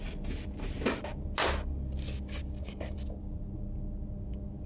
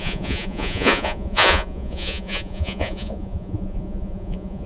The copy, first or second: second